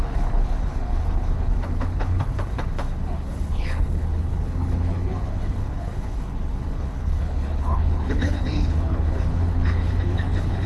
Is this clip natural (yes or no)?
no